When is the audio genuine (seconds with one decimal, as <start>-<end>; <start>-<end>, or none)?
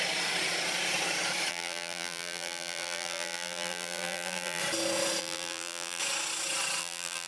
0.0-1.5; 4.6-5.2; 6.0-6.8